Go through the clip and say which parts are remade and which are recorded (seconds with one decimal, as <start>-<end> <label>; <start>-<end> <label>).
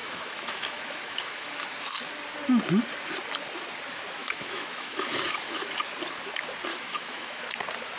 0.0-1.7 remade; 1.7-4.2 recorded; 4.2-5.7 remade; 5.7-6.7 recorded; 6.7-7.4 remade; 7.4-8.0 recorded